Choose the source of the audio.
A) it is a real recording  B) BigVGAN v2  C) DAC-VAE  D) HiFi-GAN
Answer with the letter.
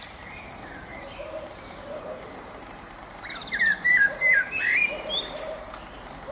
B